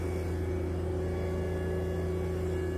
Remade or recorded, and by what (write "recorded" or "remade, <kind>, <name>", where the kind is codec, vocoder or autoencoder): recorded